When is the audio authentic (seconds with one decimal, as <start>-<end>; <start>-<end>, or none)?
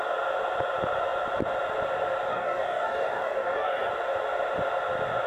0.0-2.3; 3.9-5.3